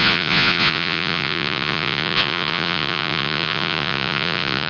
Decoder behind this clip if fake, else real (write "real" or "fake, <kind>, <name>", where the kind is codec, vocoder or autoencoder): fake, vocoder, Vocos